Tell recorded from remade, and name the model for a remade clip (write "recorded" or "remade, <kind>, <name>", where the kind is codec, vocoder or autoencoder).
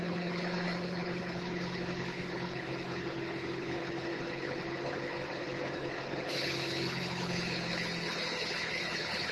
remade, codec, HILCodec